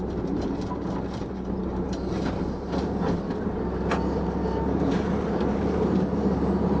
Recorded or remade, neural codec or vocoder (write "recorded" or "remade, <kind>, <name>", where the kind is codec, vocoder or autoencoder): remade, vocoder, BigVGAN v2